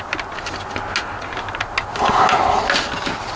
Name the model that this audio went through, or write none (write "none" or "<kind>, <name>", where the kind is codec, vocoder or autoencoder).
none